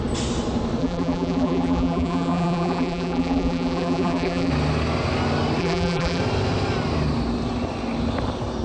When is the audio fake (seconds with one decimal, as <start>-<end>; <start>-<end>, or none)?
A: 0.8-4.5; 5.6-6.2